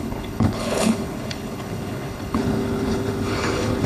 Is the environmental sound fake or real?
fake